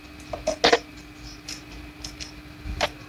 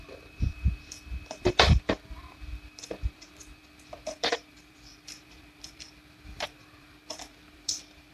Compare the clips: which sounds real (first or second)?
first